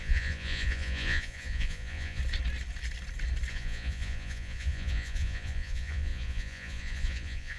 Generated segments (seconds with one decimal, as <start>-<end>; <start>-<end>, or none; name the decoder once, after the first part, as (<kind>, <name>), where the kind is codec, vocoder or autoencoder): 0.0-2.2 (vocoder, Vocos); 3.5-7.6